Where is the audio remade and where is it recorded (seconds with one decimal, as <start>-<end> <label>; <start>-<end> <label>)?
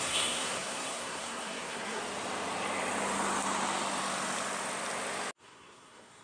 0.0-2.0 remade; 2.0-5.4 recorded; 5.4-6.2 remade